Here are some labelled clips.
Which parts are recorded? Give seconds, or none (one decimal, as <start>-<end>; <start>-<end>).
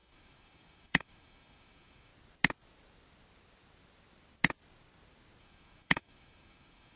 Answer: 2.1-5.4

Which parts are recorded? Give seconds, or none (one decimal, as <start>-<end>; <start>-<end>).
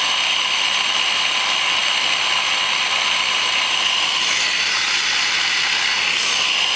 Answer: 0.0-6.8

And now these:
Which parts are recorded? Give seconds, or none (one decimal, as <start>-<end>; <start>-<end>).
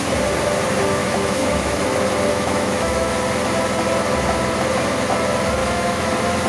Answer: 0.0-1.0; 1.8-2.3; 3.1-5.6; 6.1-6.5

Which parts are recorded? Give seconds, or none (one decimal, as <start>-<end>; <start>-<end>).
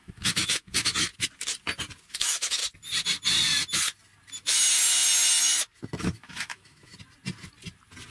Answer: 1.1-2.1; 2.6-6.0; 6.9-8.1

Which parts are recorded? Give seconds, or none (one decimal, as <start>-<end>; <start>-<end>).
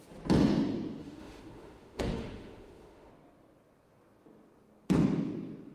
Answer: 0.0-1.0; 3.1-5.7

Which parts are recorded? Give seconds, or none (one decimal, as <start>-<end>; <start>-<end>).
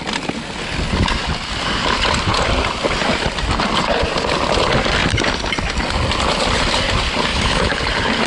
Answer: 0.0-7.3; 7.8-8.3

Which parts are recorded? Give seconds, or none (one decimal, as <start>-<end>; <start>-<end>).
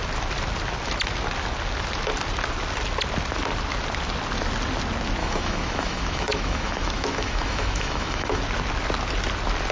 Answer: 0.0-5.2; 8.4-9.7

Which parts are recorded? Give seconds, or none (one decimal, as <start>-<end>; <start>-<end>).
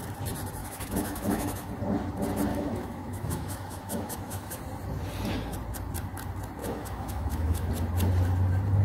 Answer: 0.0-0.6; 1.7-2.5; 4.6-6.6; 7.7-8.8